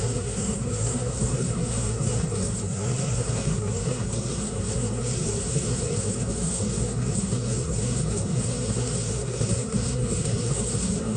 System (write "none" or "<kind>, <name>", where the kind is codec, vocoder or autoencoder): codec, SNAC